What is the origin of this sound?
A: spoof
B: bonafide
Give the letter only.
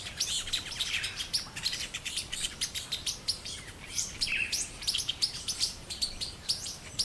A